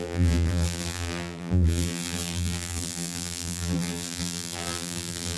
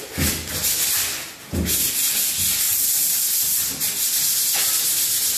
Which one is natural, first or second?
second